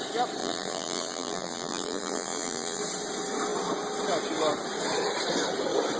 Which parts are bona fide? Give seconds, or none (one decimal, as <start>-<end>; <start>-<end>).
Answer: 0.0-0.4; 2.8-6.0